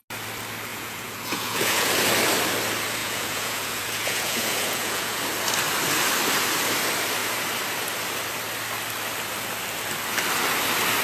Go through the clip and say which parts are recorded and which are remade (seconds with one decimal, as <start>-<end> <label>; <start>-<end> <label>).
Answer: 0.0-0.7 recorded; 0.7-1.9 remade; 1.9-3.0 recorded; 3.0-5.2 remade; 5.2-11.0 recorded